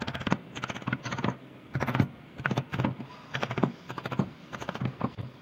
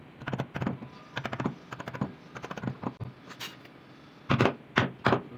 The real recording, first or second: second